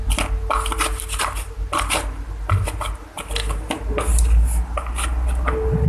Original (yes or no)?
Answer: yes